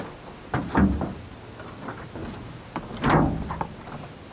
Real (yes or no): yes